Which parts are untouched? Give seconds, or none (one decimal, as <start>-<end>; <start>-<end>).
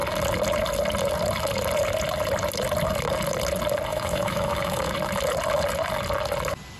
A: 0.0-3.9; 4.9-6.8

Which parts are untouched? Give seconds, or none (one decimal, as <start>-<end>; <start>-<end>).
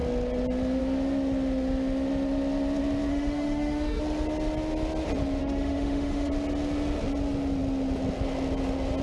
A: 0.0-3.1; 4.0-5.4; 6.3-9.0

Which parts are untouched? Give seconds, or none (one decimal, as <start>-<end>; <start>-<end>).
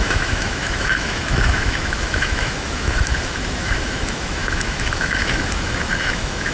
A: none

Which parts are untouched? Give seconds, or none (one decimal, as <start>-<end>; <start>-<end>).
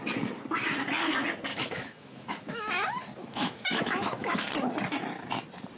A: 0.0-1.5; 2.7-3.2; 4.5-5.8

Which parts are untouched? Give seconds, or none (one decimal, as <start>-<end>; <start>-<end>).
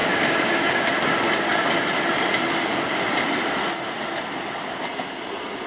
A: 0.0-5.7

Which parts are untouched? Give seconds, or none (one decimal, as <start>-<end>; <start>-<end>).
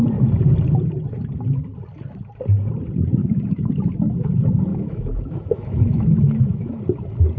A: 0.0-3.2; 3.7-4.7; 6.8-7.4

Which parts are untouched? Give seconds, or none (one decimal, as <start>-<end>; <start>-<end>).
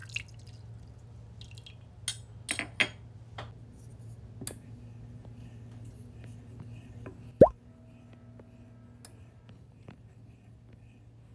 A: 0.0-11.3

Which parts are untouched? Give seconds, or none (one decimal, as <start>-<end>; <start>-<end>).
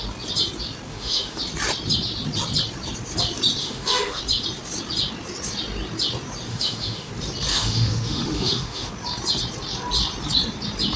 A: 0.0-0.9; 1.4-3.6; 4.2-6.5; 7.1-7.5; 8.9-11.0